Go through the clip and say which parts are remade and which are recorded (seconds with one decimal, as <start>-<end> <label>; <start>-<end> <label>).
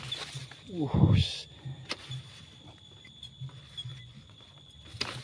0.0-3.9 recorded; 3.9-4.7 remade; 4.7-5.2 recorded